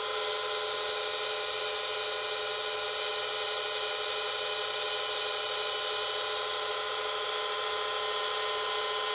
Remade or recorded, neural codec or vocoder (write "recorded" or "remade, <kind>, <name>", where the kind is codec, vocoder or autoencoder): recorded